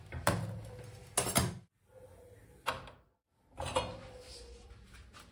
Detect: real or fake real